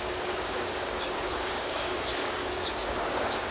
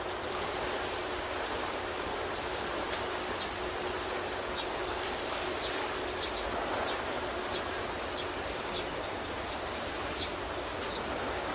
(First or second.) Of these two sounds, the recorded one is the second